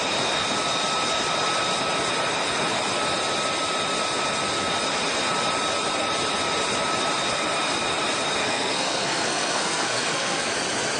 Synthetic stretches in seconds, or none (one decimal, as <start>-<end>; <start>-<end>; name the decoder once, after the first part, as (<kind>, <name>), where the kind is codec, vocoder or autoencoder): 8.4-10.5 (codec, SNAC)